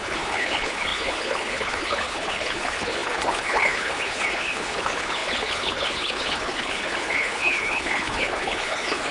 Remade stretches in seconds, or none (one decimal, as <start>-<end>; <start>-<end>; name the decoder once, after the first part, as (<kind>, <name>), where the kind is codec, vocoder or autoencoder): 0.0-9.1 (codec, HILCodec)